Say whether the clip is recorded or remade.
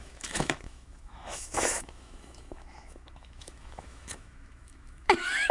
remade